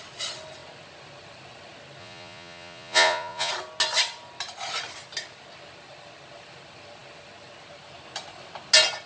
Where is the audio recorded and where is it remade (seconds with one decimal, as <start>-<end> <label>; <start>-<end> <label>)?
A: 0.0-2.0 recorded; 2.0-3.5 remade; 3.5-9.1 recorded